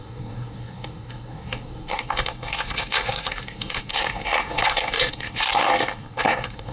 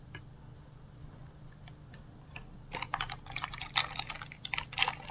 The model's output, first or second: first